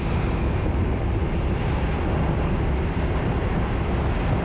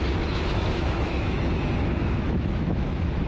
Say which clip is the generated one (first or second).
second